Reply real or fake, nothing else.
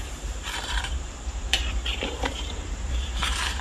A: fake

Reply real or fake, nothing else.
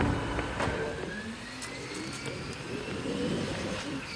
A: real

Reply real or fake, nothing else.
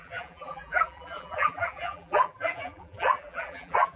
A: fake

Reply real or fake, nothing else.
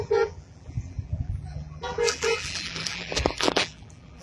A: fake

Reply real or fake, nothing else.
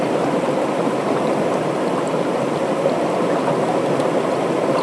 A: real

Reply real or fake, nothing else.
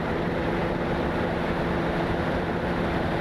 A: fake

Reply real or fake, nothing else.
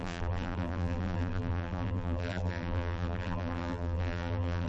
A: fake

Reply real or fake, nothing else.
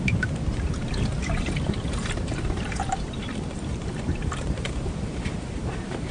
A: fake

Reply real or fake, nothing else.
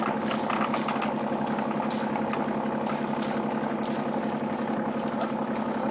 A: real